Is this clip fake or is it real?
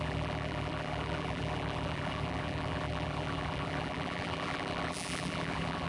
fake